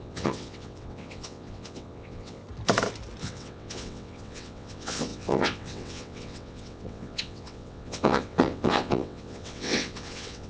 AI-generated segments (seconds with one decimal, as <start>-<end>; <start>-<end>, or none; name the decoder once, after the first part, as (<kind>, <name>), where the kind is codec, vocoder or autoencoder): 0.0-2.4 (vocoder, WaveNeXt); 3.2-10.5